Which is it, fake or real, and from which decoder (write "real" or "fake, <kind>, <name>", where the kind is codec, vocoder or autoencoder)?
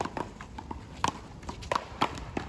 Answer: real